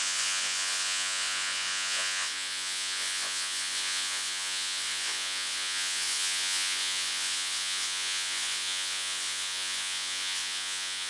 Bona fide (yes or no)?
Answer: no